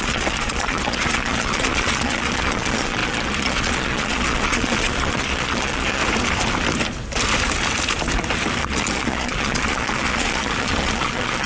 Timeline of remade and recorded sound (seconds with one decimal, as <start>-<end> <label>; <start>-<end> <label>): 0.0-6.0 remade; 6.0-8.6 recorded; 8.6-11.5 remade